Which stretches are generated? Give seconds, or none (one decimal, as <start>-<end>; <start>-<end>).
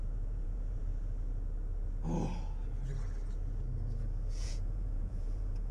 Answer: 0.0-0.9; 4.3-5.7